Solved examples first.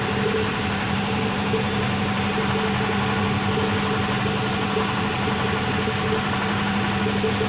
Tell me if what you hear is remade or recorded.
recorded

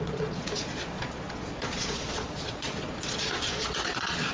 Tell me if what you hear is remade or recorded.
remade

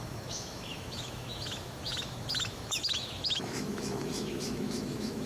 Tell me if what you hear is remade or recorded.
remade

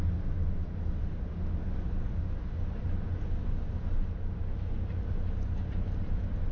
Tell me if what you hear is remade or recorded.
recorded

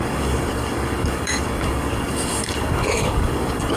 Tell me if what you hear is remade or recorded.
remade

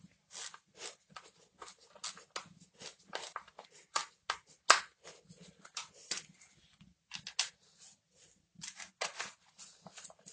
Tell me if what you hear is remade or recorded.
recorded